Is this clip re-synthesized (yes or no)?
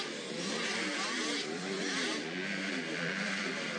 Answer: yes